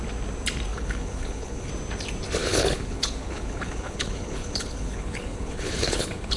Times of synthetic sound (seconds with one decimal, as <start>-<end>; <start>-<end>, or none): 0.7-1.7; 2.4-6.4